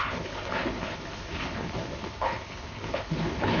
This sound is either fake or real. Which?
fake